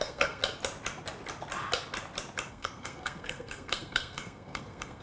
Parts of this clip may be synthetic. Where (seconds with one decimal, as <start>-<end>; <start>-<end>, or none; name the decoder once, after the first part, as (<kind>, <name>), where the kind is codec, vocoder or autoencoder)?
0.0-0.4 (codec, SNAC); 2.5-5.0